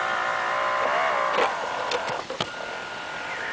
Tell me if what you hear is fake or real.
real